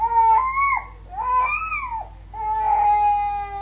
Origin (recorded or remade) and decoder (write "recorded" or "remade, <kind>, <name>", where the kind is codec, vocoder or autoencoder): recorded